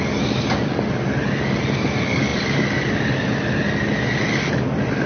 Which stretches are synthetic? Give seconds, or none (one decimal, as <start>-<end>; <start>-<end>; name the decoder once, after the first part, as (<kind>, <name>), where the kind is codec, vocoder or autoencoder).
none